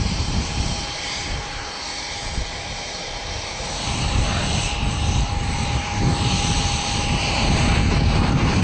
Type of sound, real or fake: fake